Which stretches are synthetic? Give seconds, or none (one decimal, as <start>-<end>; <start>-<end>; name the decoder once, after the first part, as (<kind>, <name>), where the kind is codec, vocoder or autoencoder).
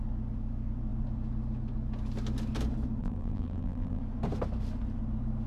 3.0-4.0 (vocoder, BigVGAN v2)